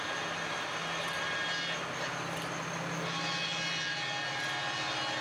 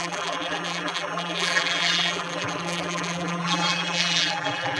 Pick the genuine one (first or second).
first